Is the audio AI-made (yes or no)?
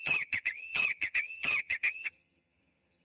yes